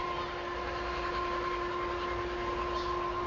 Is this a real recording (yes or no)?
yes